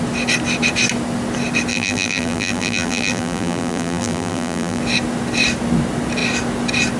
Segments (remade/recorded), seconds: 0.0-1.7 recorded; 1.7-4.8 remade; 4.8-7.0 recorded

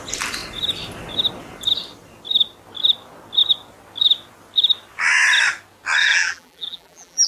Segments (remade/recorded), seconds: 0.0-6.0 recorded; 6.0-7.3 remade